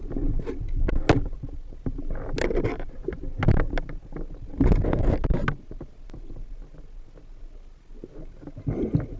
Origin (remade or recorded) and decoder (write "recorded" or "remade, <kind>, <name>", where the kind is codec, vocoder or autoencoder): recorded